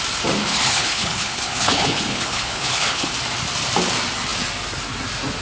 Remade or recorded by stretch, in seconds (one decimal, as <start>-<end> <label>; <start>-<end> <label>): 0.0-0.4 recorded; 0.4-3.1 remade; 3.1-5.4 recorded